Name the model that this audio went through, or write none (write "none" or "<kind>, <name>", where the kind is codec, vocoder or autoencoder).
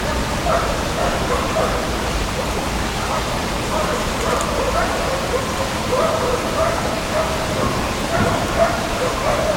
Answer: vocoder, BigVGAN v2